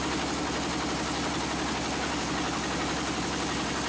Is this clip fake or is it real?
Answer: real